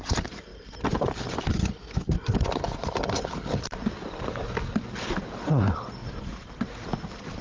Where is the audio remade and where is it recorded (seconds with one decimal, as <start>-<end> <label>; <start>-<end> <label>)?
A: 0.0-7.4 recorded